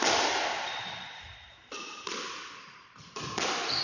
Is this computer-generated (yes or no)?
no